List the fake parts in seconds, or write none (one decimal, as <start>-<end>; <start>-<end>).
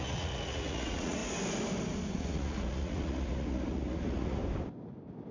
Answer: 0.0-1.2; 2.1-4.4